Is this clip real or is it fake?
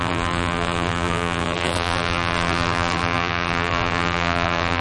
fake